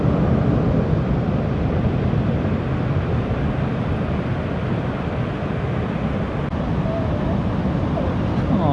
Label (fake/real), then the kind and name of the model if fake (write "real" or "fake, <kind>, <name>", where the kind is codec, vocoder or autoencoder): real